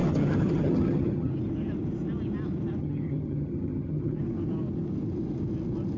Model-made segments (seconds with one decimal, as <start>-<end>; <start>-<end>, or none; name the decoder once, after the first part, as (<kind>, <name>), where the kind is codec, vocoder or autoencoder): 0.0-1.3 (vocoder, HiFi-GAN); 2.8-4.2

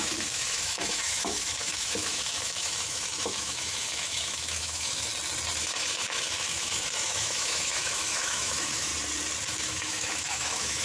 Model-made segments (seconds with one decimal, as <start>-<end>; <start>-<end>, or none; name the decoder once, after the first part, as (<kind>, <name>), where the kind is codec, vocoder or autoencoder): 0.0-5.1 (autoencoder, DAC-VAE); 5.6-8.9; 9.5-10.8

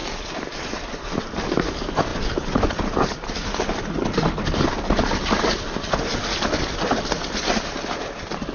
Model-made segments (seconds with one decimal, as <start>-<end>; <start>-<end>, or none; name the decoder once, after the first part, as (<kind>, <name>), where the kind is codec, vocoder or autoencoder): 0.0-1.2 (vocoder, BigVGAN v2); 2.1-5.4

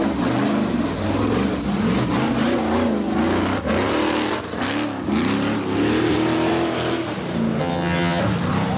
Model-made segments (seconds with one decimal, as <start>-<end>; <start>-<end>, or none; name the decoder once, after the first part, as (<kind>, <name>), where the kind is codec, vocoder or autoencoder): 7.6-8.2 (vocoder, HiFi-GAN)

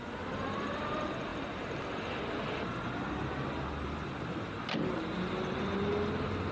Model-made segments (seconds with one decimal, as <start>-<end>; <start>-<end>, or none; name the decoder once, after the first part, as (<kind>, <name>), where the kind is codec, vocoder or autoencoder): none

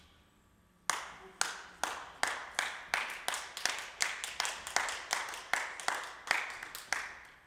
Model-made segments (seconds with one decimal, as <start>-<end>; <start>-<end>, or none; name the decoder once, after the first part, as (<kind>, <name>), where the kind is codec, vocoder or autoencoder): none

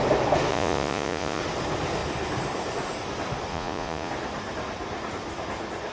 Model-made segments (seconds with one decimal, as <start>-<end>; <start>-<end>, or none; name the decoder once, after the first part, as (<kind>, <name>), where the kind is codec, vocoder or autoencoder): 0.5-1.4 (vocoder, Vocos); 3.5-4.1

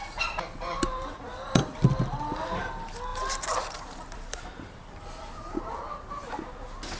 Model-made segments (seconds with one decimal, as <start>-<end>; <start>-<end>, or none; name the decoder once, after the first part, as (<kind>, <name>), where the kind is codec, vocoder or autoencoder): 0.0-1.2 (vocoder, BigVGAN v2); 3.1-5.4